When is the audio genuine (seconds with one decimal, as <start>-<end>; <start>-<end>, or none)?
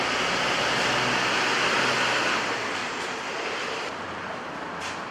0.0-2.8; 4.4-5.1